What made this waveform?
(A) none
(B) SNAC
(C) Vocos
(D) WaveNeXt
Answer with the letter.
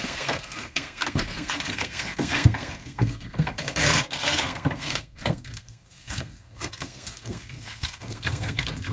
B